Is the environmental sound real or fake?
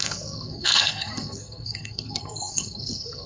fake